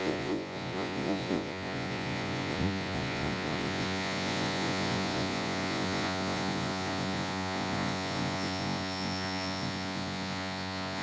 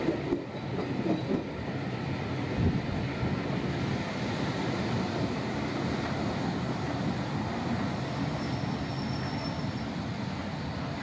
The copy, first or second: first